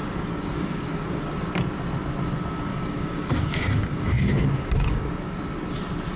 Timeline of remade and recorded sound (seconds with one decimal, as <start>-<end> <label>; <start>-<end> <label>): 0.0-1.5 remade; 1.5-2.7 recorded; 2.7-5.1 remade; 5.1-6.2 recorded